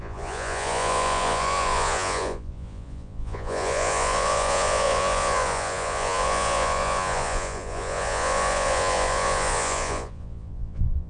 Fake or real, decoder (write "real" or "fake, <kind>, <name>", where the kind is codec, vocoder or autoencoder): fake, vocoder, Vocos